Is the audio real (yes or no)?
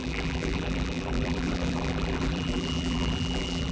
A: no